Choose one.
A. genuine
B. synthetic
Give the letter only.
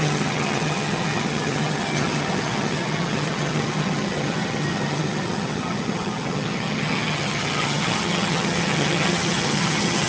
B